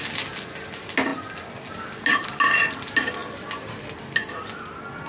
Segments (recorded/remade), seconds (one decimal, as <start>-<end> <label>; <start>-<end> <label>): 0.0-5.1 recorded